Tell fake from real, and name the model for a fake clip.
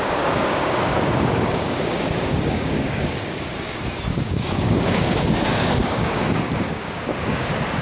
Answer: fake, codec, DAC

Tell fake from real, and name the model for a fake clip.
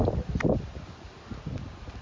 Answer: real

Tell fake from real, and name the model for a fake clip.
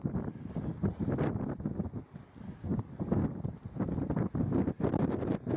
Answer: real